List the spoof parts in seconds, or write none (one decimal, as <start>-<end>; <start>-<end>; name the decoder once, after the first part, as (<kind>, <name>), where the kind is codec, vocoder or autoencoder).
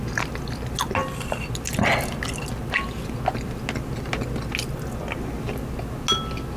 none